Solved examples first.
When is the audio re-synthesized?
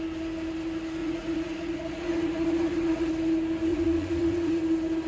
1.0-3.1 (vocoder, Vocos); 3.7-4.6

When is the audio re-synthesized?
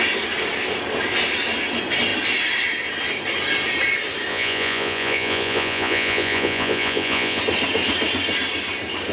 4.3-7.4 (vocoder, Vocos)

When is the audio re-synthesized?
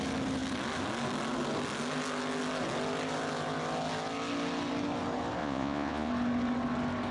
5.4-6.1 (vocoder, Vocos)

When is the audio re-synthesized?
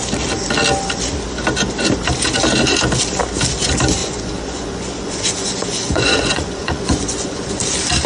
4.0-7.6 (vocoder, Vocos)